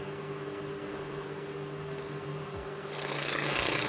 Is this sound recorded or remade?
remade